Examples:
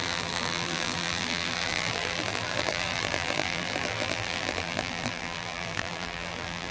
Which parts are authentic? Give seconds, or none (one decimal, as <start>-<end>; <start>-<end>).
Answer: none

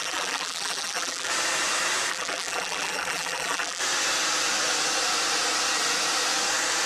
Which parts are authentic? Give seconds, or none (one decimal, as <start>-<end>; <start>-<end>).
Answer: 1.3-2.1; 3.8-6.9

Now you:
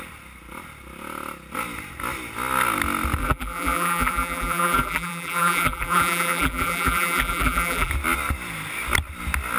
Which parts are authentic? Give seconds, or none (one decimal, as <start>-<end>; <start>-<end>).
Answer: 0.0-3.2; 7.9-9.6